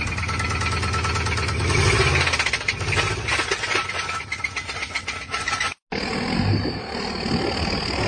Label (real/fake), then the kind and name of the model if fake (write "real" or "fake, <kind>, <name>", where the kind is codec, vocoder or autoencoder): real